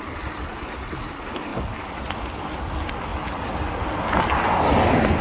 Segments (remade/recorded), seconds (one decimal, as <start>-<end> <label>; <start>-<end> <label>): 0.0-0.5 recorded; 0.5-1.0 remade; 1.0-5.2 recorded